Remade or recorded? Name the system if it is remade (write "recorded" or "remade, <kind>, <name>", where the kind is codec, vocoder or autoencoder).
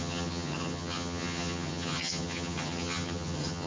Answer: remade, vocoder, HiFi-GAN